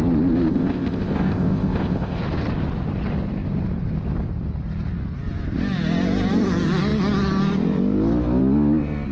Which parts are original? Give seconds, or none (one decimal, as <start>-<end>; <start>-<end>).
0.0-0.5; 2.2-9.1

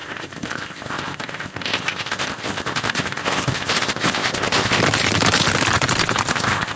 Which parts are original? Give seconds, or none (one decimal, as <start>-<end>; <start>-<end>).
4.8-6.3

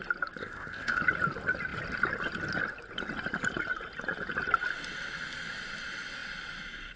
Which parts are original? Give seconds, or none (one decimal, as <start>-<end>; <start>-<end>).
0.0-0.4; 1.0-7.0